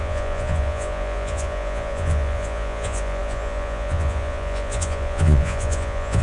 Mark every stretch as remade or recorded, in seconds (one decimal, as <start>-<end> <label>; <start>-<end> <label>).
0.0-6.2 remade